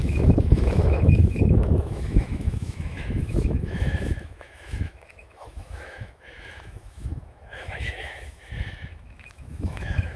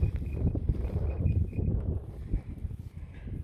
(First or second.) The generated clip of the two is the first